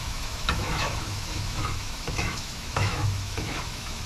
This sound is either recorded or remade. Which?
remade